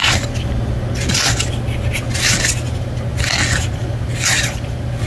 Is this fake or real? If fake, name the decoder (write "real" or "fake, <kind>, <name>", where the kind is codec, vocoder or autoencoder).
real